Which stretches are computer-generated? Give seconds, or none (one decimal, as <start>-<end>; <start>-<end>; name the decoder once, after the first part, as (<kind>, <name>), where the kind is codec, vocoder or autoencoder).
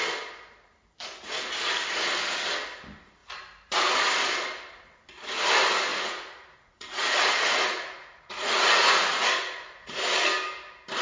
5.9-10.1 (vocoder, Vocos)